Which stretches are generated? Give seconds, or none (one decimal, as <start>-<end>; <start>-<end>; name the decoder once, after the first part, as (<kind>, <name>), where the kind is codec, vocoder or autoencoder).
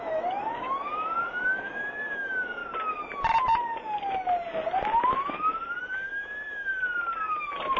0.0-2.6 (autoencoder, DAC-VAE); 5.8-6.7